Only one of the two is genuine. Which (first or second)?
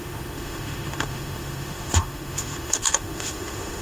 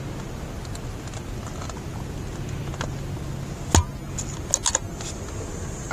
second